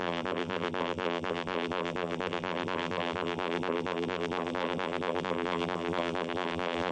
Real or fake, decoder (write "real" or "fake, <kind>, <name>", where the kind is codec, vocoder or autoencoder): fake, vocoder, BigVGAN v2